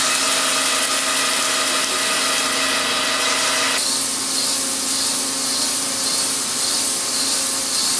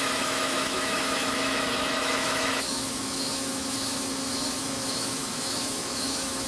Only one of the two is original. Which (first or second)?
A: first